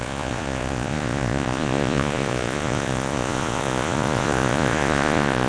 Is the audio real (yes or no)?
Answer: no